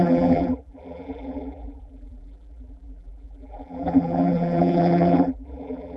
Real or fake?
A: fake